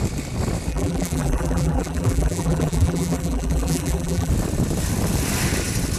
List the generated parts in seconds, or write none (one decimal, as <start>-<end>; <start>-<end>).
0.7-4.3